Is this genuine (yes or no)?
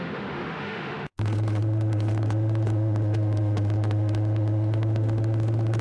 no